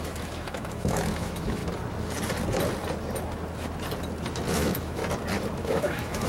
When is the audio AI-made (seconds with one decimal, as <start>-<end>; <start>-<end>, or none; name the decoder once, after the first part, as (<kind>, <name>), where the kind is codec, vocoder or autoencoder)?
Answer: 0.0-1.6 (autoencoder, DAC-VAE); 4.5-5.0; 5.6-6.3